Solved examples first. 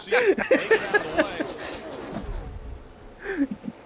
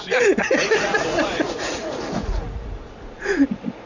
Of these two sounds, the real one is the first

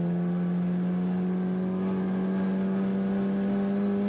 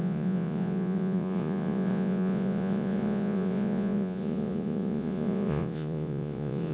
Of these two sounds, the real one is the first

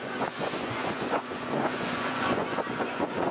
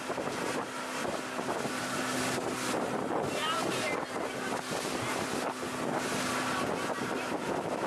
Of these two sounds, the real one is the second